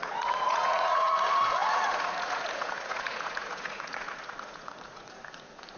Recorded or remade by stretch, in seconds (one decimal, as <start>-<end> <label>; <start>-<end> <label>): 0.0-5.8 remade